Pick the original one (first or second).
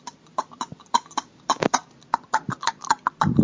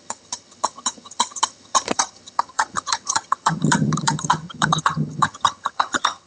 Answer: first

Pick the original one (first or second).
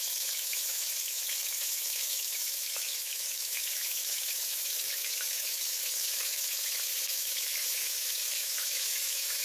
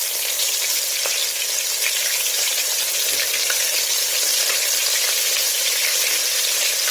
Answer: second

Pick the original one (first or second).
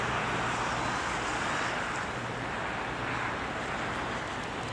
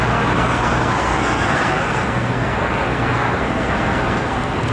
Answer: first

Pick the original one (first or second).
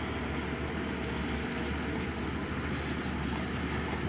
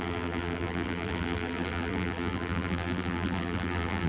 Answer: first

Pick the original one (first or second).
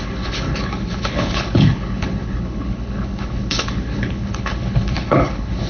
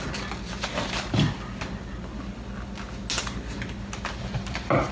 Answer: second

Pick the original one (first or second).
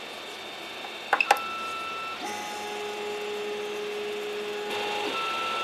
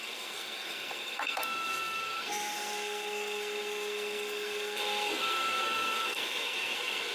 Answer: first